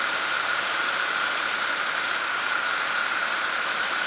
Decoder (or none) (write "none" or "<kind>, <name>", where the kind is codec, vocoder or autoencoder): vocoder, BigVGAN v2